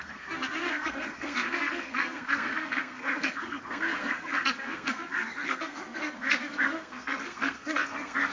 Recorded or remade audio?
remade